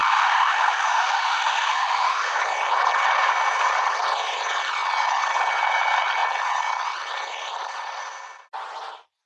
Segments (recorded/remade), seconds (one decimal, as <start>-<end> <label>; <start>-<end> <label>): 0.0-2.4 remade; 2.4-9.3 recorded